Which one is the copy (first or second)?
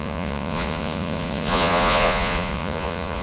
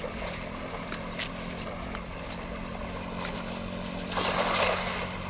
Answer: first